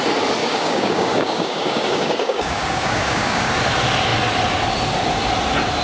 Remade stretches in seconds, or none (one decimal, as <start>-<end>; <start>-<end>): 0.4-3.5